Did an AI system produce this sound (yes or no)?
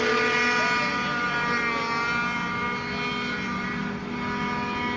no